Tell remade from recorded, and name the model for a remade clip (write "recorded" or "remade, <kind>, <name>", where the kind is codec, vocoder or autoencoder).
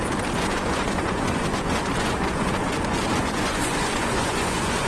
remade, vocoder, Vocos